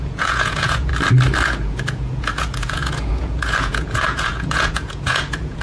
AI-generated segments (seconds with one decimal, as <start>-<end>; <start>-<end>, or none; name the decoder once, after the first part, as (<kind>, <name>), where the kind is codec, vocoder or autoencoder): 0.0-0.9 (vocoder, Vocos); 1.4-5.6